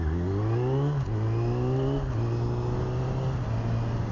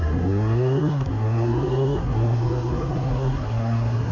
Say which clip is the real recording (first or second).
first